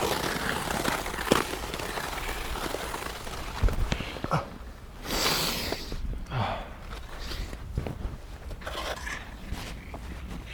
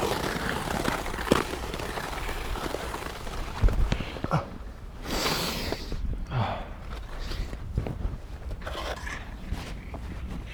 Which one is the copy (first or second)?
second